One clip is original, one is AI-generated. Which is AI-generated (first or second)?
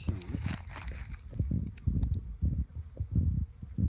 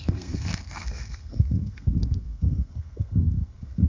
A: second